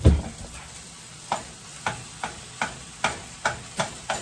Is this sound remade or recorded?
recorded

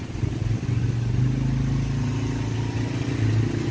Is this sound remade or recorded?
recorded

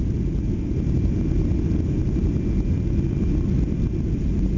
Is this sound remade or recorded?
recorded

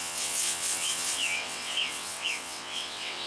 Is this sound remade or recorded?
remade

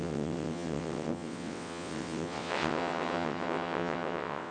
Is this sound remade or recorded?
remade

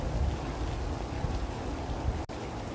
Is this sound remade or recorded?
recorded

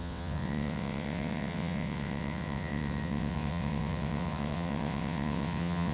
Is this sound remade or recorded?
remade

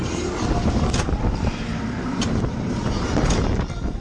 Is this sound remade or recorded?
recorded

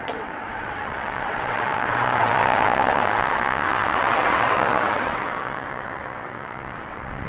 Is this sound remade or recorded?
remade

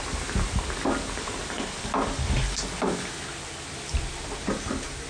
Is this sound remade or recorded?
recorded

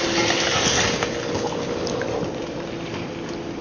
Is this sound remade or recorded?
recorded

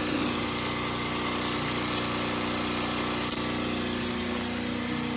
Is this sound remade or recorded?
recorded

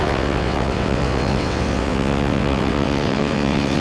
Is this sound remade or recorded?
remade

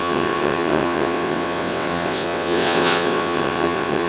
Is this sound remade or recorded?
remade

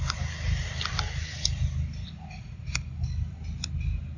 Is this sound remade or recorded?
recorded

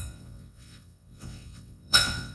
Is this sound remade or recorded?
remade